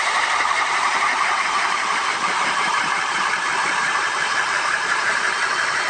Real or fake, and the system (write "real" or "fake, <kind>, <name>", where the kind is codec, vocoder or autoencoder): fake, vocoder, BigVGAN v2